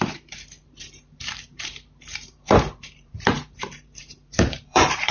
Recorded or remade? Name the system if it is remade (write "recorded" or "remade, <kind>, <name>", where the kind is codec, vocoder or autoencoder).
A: remade, vocoder, BigVGAN v2